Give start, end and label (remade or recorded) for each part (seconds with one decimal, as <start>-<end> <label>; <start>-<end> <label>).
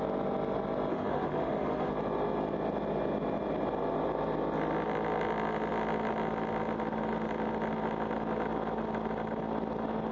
0.0-0.9 recorded; 0.9-1.9 remade; 1.9-10.1 recorded